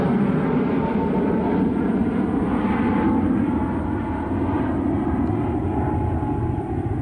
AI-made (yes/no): no